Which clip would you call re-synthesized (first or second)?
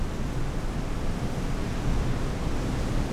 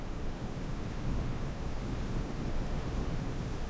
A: second